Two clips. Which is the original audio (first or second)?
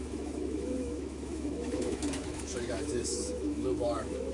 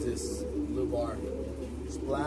second